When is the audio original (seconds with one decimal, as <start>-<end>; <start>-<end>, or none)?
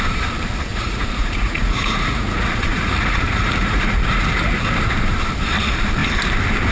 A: 0.0-0.7; 4.7-6.7